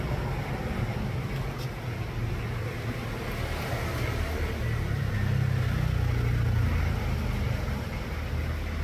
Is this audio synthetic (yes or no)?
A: no